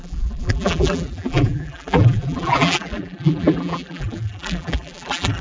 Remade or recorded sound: remade